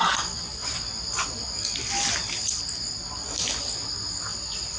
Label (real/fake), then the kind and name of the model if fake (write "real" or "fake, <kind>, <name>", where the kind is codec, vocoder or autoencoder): real